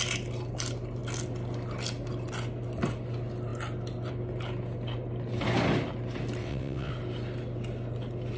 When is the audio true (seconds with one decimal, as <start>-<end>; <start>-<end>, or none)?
0.0-6.4; 6.9-8.4